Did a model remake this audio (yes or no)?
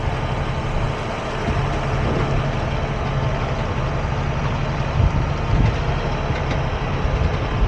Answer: no